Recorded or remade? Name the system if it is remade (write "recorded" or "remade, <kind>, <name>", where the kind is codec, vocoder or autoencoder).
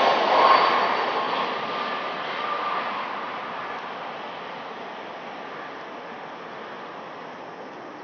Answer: recorded